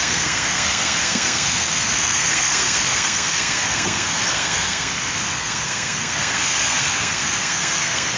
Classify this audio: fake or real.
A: fake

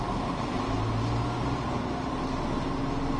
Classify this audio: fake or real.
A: real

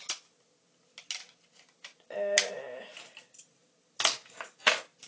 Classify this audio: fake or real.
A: real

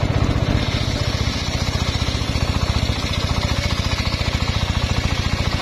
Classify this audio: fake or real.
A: real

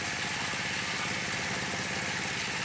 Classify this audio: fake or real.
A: real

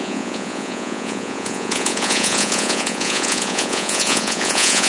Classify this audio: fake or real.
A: fake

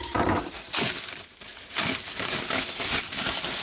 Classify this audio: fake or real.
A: real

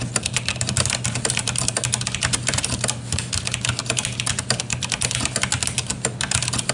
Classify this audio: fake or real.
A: real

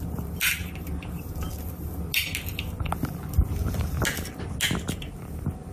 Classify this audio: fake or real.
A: real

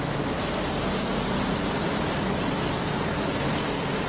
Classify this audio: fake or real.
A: real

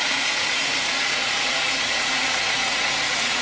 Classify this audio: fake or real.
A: fake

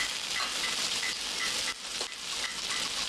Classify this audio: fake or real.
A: real